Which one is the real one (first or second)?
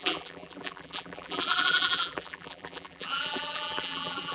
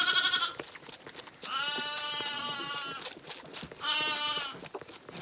second